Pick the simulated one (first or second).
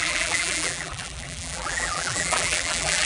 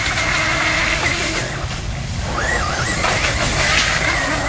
first